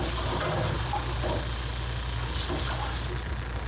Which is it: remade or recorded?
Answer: recorded